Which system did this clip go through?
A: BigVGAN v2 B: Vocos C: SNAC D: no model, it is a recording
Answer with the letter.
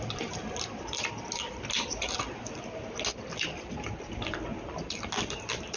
D